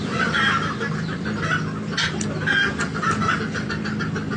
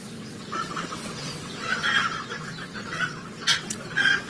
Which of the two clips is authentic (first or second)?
first